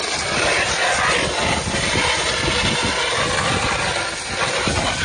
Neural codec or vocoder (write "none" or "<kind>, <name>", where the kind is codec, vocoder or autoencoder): none